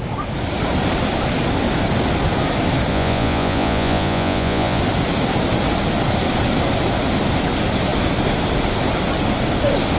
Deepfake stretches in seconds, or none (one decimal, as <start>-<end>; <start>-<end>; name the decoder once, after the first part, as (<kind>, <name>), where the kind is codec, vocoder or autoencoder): 2.9-4.8 (vocoder, Vocos)